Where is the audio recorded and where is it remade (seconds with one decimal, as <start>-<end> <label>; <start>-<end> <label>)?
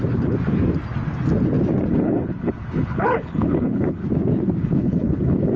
0.0-1.9 recorded; 1.9-4.0 remade; 4.0-4.6 recorded; 4.6-5.6 remade